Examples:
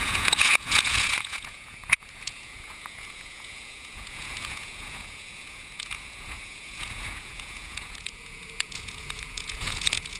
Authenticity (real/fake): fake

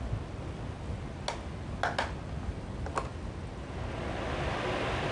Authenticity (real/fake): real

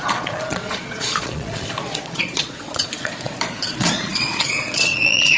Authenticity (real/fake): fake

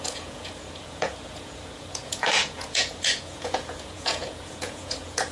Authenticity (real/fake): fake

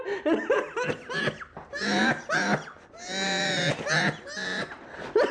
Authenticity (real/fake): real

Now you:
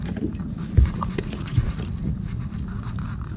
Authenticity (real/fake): fake